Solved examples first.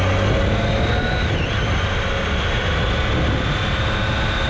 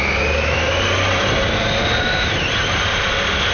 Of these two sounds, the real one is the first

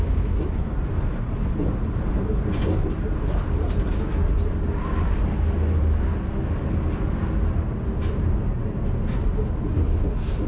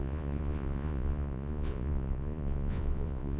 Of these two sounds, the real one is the first